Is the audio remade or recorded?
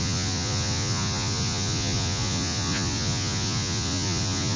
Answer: remade